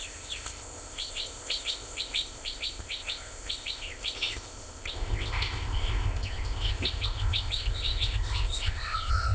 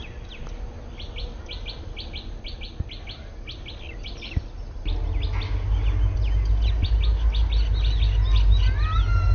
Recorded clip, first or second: second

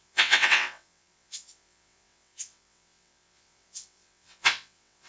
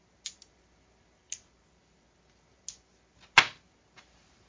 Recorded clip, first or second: second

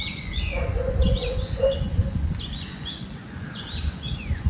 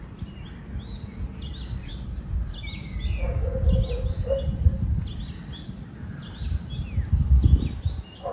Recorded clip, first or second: second